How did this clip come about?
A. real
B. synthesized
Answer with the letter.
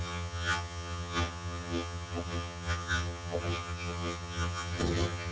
B